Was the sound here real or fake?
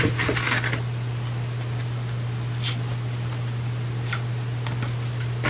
real